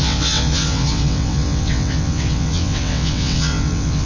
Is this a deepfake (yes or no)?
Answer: yes